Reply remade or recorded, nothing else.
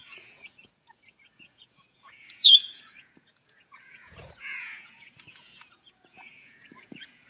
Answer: remade